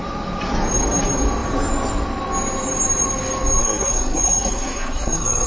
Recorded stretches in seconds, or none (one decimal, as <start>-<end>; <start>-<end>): 0.0-3.6

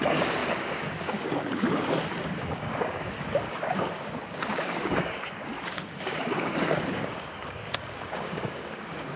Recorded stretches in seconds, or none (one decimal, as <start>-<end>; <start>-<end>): none

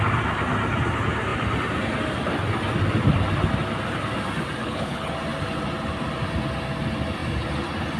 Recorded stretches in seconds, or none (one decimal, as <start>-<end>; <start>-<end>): 0.0-4.6; 5.1-8.0

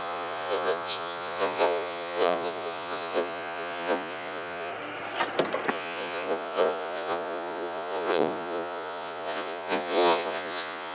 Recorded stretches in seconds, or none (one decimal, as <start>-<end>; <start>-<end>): 4.7-5.7

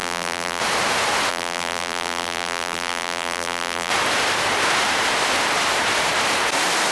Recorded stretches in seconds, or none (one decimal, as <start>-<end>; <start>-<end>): 0.6-1.3; 3.9-6.9

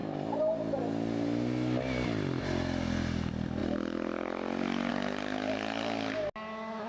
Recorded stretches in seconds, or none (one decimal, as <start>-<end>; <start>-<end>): 0.8-6.9

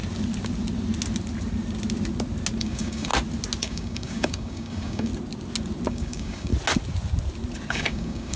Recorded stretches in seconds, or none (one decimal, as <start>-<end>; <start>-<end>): 0.0-2.6; 3.1-3.6; 5.1-5.9; 6.5-7.7